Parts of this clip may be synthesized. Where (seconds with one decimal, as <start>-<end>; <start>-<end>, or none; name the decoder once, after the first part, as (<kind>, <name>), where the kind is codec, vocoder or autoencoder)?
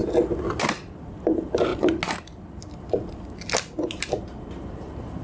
0.5-1.7 (vocoder, BigVGAN v2); 4.7-5.2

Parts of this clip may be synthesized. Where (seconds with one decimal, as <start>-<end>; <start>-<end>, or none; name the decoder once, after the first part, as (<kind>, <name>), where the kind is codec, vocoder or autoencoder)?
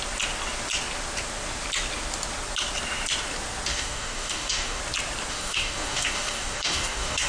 3.7-4.8 (codec, DAC); 5.3-7.3